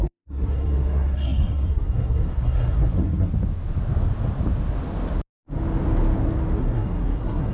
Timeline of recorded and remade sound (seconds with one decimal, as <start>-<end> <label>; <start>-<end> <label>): 0.0-3.3 remade; 3.3-6.6 recorded; 6.6-7.5 remade